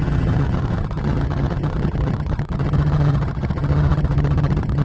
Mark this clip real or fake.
fake